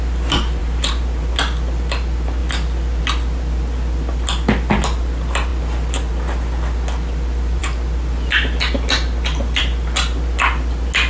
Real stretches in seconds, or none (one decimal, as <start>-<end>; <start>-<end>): 0.0-0.6; 1.3-11.1